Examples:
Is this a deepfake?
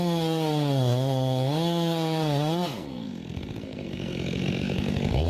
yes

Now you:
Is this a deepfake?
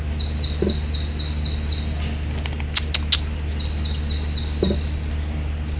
no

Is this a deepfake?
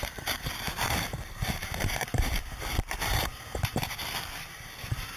yes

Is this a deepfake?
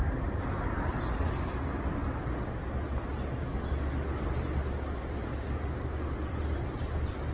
no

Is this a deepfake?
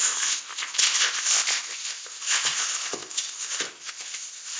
yes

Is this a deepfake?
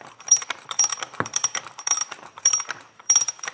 yes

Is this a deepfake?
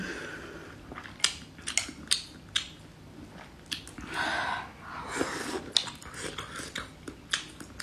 no